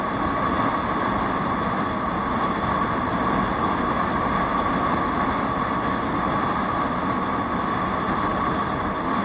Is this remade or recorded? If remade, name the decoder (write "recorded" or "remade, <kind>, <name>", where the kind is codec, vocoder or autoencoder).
recorded